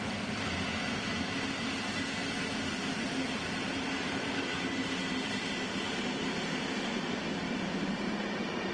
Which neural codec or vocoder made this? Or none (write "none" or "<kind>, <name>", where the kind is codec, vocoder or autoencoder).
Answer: none